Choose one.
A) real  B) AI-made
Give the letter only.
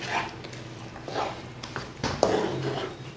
A